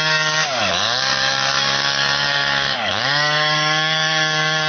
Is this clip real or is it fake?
fake